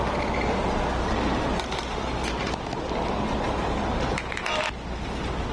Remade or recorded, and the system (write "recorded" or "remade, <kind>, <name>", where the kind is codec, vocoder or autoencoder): recorded